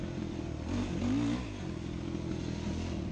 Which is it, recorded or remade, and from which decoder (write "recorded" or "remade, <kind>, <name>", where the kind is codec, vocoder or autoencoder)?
recorded